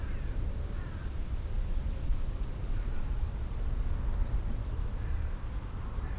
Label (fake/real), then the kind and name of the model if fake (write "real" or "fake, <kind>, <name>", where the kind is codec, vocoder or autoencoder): real